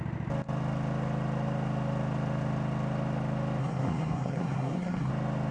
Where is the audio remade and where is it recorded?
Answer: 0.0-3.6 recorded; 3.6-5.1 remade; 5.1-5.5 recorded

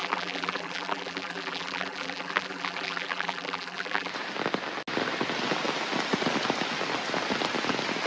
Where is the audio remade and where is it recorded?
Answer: 0.0-4.1 remade; 4.1-8.1 recorded

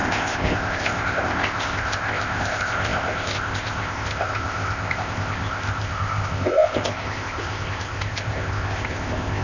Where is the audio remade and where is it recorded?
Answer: 0.0-9.4 remade

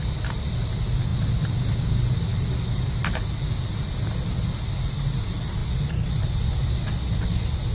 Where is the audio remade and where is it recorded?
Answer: 0.0-7.7 recorded

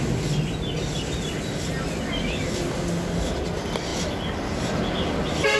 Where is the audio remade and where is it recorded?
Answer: 0.0-5.6 recorded

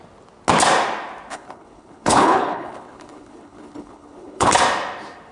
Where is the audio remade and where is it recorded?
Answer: 0.0-1.3 recorded; 1.3-4.5 remade; 4.5-5.3 recorded

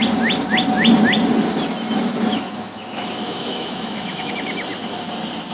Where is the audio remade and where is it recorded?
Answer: 0.0-2.3 recorded; 2.3-4.3 remade; 4.3-5.5 recorded

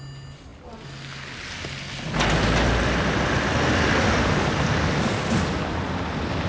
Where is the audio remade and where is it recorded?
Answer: 0.0-6.5 recorded